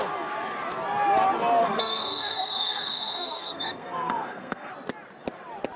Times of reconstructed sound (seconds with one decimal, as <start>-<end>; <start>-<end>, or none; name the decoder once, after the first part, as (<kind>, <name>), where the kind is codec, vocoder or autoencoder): 1.6-4.7 (codec, SNAC)

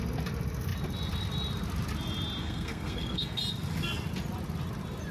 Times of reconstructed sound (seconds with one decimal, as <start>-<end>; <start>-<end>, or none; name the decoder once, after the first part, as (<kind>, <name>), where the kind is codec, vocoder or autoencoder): 2.4-3.4 (codec, SNAC)

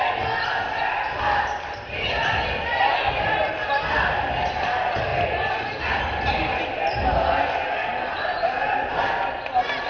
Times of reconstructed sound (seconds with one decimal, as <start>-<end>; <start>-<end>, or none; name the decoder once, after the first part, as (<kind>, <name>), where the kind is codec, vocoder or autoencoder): none

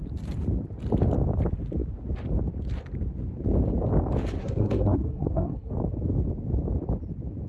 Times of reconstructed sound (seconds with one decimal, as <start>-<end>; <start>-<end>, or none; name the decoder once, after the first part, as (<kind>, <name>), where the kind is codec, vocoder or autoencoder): 4.4-5.7 (codec, SNAC)

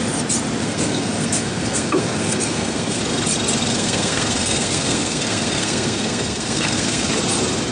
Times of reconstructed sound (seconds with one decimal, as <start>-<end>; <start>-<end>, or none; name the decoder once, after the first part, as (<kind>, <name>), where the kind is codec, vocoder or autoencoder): 0.6-3.0 (codec, SNAC); 3.7-7.1

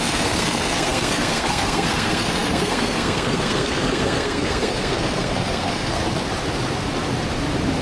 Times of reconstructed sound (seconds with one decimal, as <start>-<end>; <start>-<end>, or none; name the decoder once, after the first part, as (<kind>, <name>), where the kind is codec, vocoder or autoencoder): 0.0-6.0 (codec, SNAC)

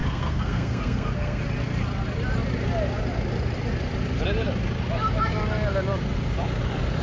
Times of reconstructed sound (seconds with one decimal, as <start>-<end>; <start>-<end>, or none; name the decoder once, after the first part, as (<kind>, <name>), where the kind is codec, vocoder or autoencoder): 0.0-1.4 (codec, SNAC)

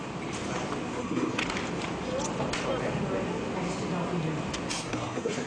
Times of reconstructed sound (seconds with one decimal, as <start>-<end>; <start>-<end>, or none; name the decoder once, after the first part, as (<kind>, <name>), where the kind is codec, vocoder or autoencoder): 1.0-1.4 (codec, SNAC); 4.7-5.5